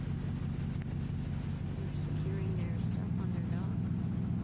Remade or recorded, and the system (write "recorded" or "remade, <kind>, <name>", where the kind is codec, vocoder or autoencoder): recorded